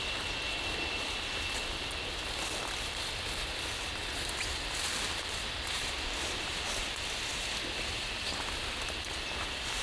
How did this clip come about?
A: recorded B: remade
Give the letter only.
A